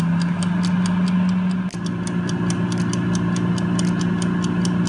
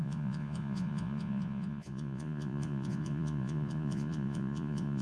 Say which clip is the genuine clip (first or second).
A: first